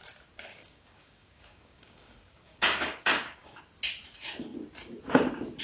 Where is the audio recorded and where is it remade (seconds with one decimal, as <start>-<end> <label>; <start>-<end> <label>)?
0.0-0.5 recorded; 0.5-3.6 remade; 3.6-5.6 recorded